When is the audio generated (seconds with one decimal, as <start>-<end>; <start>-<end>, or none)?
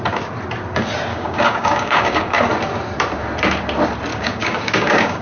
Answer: 1.1-2.4; 4.1-5.2